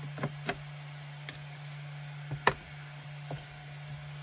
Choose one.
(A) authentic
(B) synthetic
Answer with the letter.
A